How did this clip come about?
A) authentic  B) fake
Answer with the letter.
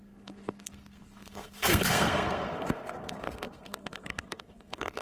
B